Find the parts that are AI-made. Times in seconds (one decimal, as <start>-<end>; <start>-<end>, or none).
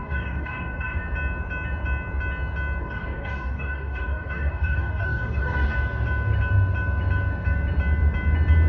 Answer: 0.0-1.0; 2.8-5.7